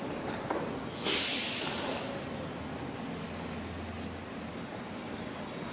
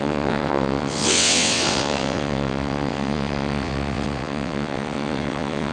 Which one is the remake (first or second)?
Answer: second